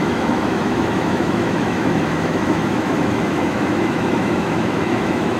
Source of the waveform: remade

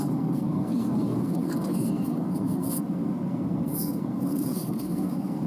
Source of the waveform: remade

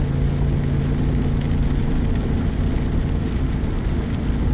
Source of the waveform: recorded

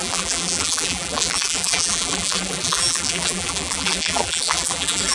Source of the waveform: remade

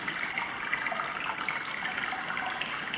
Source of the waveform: recorded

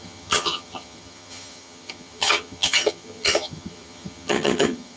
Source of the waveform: remade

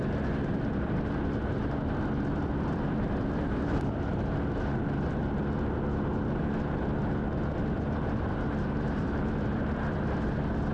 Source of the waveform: recorded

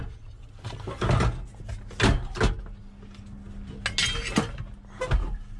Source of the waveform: recorded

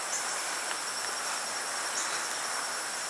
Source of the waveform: recorded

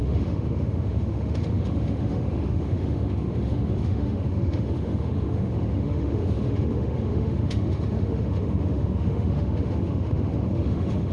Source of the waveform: remade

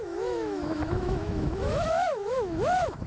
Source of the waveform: remade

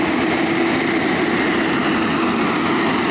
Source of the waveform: recorded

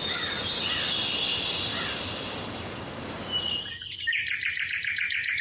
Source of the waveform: recorded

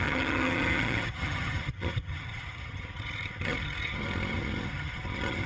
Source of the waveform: remade